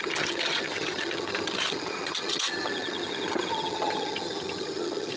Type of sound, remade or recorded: remade